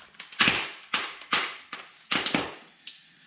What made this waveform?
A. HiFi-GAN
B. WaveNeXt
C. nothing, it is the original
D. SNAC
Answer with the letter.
C